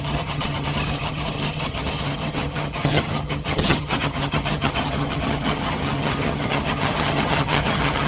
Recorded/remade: remade